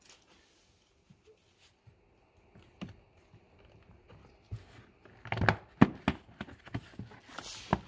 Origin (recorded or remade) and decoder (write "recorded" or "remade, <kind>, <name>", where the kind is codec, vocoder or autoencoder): recorded